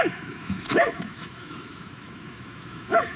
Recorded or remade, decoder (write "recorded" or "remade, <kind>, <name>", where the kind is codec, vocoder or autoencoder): remade, autoencoder, DAC-VAE